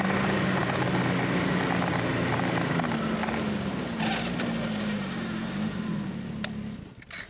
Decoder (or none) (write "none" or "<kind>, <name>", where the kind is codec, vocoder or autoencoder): none